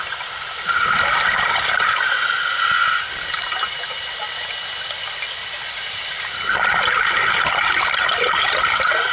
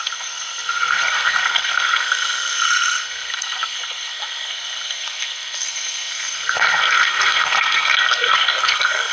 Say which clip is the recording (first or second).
first